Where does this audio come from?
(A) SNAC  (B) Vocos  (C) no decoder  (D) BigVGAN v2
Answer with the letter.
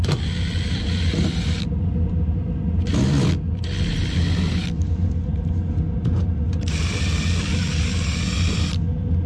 C